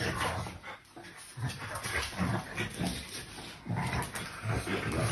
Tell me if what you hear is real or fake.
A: real